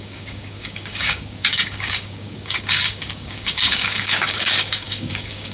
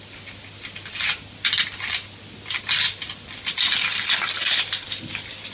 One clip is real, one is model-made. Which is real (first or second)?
second